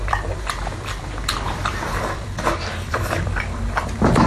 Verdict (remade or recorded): remade